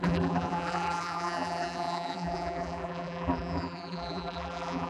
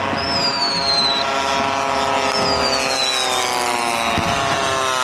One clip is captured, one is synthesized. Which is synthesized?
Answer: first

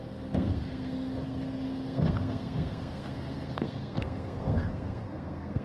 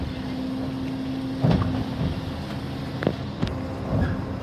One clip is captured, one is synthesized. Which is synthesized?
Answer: first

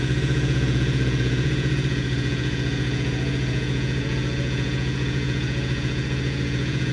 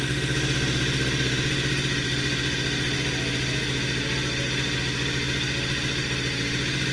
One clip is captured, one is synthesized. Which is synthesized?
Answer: first